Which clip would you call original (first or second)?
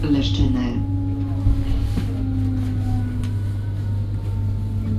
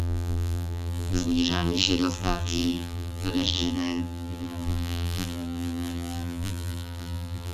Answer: first